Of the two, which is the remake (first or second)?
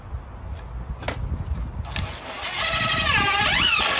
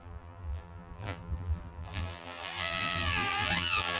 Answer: second